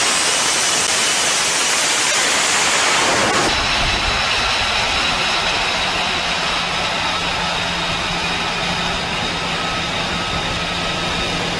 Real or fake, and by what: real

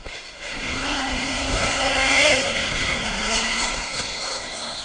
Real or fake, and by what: fake, codec, SNAC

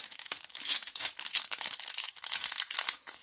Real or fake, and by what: fake, autoencoder, DAC-VAE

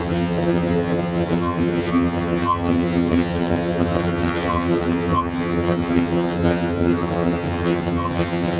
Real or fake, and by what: fake, vocoder, HiFi-GAN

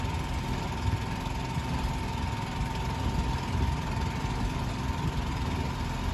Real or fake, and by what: real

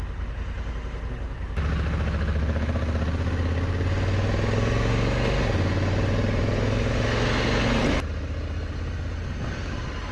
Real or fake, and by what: real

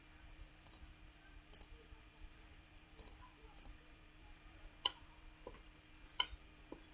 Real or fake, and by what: fake, vocoder, BigVGAN v2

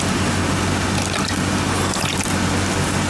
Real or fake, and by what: real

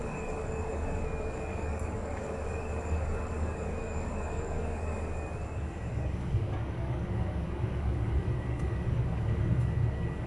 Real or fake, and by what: fake, codec, DAC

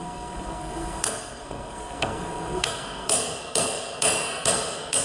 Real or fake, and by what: fake, codec, SNAC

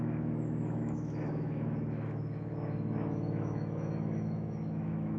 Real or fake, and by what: fake, autoencoder, DAC-VAE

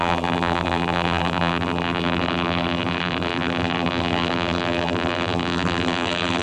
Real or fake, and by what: fake, vocoder, BigVGAN v2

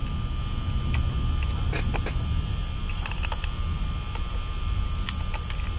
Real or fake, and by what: real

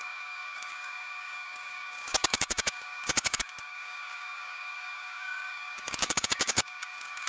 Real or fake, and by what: fake, codec, DAC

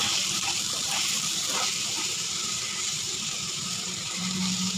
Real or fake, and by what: fake, vocoder, BigVGAN v2